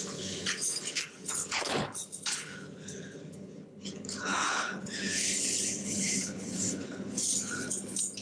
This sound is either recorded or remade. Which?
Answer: remade